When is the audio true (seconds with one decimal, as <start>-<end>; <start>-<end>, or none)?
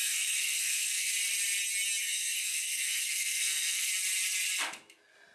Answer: 1.1-2.0; 3.9-5.3